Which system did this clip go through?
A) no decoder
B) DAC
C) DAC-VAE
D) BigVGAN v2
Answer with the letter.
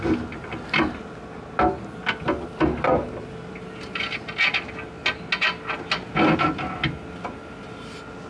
A